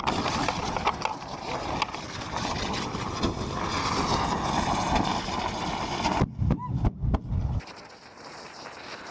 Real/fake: real